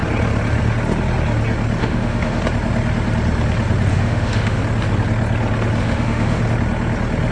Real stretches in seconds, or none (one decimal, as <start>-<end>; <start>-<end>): 0.0-1.8; 2.4-3.9; 4.6-5.8; 6.4-7.3